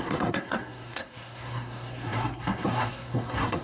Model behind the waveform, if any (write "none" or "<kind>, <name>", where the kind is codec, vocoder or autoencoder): codec, SNAC